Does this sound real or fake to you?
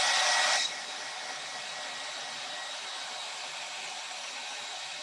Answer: real